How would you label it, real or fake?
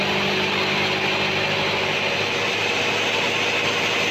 real